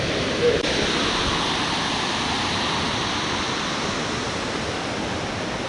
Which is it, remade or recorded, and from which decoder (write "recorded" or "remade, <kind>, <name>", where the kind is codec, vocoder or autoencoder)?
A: recorded